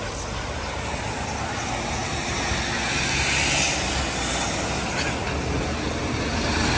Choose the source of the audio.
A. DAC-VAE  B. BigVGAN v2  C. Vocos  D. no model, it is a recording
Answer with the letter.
D